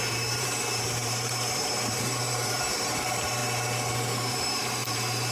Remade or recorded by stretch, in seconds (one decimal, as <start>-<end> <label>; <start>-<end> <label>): 0.0-3.4 remade; 3.4-4.3 recorded; 4.3-5.3 remade